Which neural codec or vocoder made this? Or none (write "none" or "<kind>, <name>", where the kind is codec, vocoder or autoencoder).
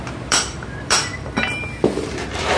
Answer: vocoder, BigVGAN v2